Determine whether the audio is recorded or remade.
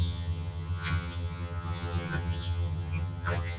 remade